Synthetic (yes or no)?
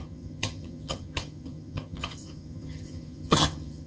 yes